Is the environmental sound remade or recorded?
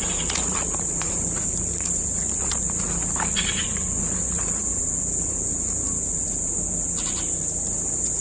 remade